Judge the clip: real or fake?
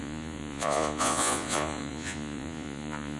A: fake